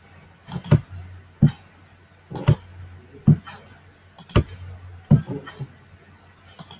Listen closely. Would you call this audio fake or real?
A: real